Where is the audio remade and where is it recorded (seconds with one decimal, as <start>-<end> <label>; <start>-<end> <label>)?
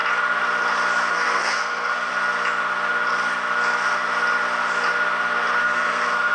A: 0.0-1.1 recorded; 1.1-2.1 remade; 2.1-5.6 recorded; 5.6-6.3 remade